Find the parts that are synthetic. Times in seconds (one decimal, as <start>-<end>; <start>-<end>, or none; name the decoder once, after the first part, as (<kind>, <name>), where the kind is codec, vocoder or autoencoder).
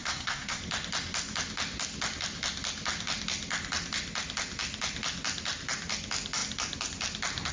0.0-0.6 (codec, SNAC)